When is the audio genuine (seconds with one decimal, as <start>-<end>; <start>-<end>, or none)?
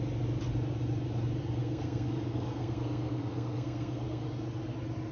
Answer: 0.0-1.6; 4.2-5.1